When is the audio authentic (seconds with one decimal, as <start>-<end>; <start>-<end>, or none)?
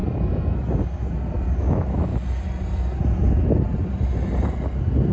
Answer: 0.0-1.6; 2.1-5.1